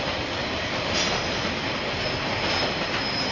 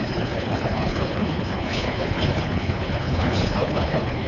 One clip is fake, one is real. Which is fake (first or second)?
second